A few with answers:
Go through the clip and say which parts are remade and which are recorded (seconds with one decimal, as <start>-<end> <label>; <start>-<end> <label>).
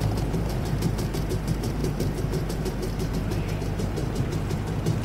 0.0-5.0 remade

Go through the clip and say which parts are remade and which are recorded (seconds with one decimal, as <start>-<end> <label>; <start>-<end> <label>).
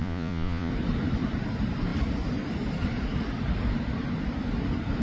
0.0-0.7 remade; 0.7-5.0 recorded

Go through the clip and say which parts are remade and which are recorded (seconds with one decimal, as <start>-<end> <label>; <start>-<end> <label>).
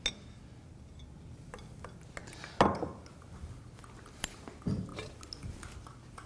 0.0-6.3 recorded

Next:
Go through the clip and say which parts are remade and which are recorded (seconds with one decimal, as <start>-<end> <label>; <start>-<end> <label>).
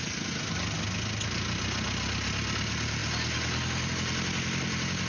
0.0-5.1 recorded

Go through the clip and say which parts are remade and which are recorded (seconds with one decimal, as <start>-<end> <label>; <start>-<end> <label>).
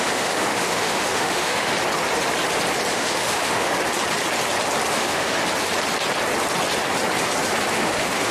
0.0-1.7 remade; 1.7-2.9 recorded; 2.9-3.7 remade; 3.7-4.9 recorded; 4.9-5.4 remade; 5.4-7.7 recorded; 7.7-8.3 remade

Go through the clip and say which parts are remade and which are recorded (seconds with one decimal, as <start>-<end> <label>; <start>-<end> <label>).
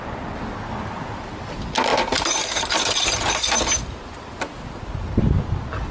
0.0-5.9 recorded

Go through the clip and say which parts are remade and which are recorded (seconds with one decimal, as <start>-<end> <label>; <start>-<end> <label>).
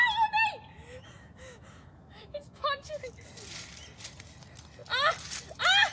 0.0-0.8 recorded; 0.8-3.3 remade; 3.3-5.9 recorded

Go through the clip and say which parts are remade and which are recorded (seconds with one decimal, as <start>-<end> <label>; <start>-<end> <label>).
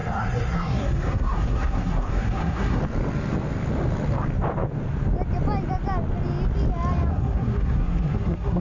0.0-2.8 remade; 2.8-7.1 recorded; 7.1-8.6 remade